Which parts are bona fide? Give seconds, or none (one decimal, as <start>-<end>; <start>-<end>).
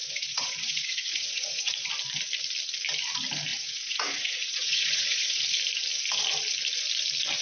1.9-3.5; 5.4-7.4